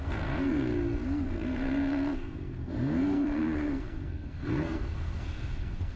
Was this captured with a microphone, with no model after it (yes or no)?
no